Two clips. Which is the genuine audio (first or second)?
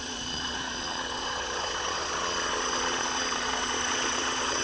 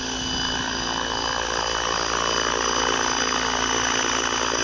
second